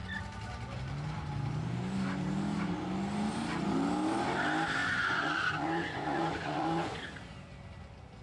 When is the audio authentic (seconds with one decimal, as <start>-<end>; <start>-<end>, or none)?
0.0-4.8; 7.0-8.2

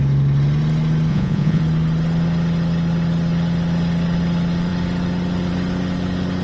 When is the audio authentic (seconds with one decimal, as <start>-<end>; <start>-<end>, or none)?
0.0-1.1; 1.6-6.4

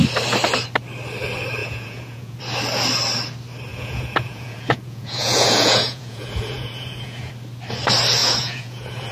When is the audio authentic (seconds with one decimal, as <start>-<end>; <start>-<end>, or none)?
0.0-1.6; 2.4-3.7; 7.3-8.2

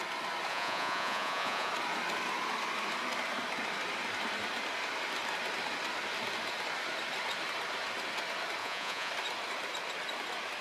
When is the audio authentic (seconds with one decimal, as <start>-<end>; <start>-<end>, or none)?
0.0-0.5; 1.7-8.6; 9.1-10.6

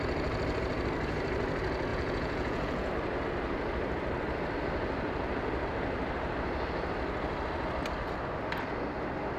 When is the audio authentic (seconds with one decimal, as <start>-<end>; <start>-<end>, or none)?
0.0-1.9; 2.9-9.4

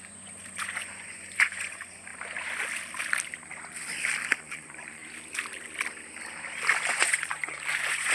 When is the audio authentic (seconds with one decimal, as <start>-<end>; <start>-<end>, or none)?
2.1-4.4; 5.0-6.9

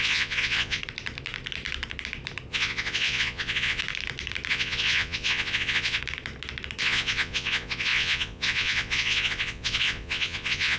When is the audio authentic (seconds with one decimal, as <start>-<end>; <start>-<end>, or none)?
0.8-2.5; 3.8-4.5; 6.0-6.8

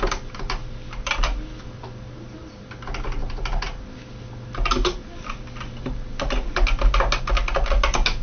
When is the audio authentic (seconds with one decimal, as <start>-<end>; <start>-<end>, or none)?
0.0-8.2